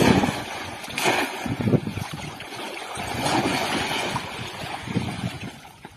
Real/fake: fake